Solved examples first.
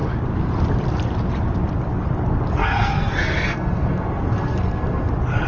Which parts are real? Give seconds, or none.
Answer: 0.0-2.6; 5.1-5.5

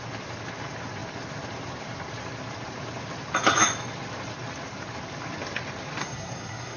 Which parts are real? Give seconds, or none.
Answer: 0.0-6.0

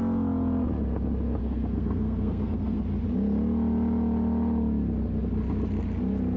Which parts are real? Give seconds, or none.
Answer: 0.0-1.4; 2.8-6.4

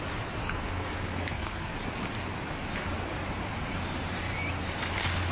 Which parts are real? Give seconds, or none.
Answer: 0.0-0.4; 1.7-5.3